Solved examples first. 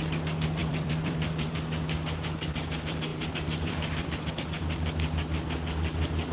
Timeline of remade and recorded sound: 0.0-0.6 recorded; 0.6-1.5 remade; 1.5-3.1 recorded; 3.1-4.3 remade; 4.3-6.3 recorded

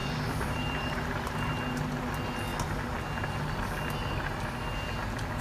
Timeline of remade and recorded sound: 0.0-1.5 remade; 1.5-5.4 recorded

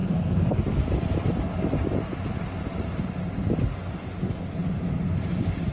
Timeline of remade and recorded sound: 0.0-5.7 recorded

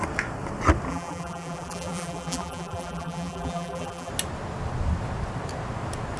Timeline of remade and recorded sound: 0.0-0.9 recorded; 0.9-4.1 remade; 4.1-6.2 recorded

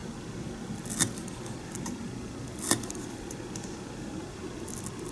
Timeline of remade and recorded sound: 0.0-5.1 recorded

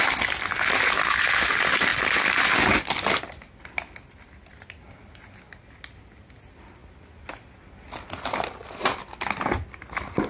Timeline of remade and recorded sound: 0.0-10.3 recorded

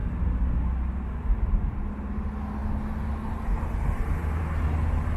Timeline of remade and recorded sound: 0.0-5.2 recorded